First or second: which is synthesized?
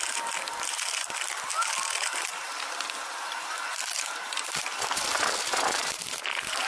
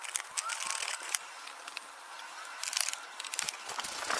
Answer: first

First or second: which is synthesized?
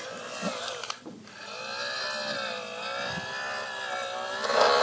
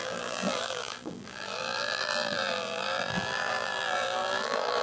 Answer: second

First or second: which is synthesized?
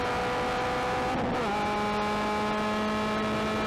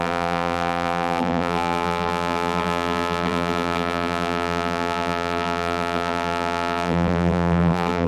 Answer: second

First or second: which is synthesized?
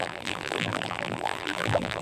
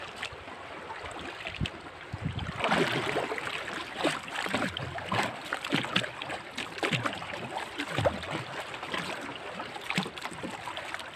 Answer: first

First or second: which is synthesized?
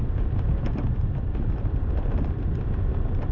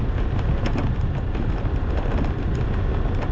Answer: first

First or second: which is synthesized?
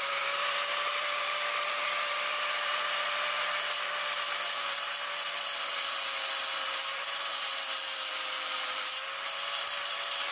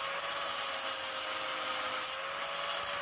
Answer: first